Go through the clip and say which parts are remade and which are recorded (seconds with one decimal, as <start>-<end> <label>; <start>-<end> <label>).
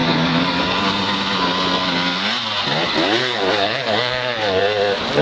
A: 0.0-0.6 remade; 0.6-3.2 recorded; 3.2-4.6 remade; 4.6-5.2 recorded